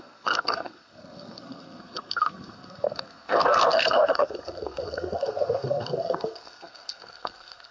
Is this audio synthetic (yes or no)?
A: yes